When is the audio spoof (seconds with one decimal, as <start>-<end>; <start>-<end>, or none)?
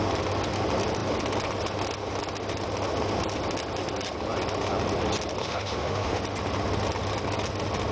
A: 5.4-6.2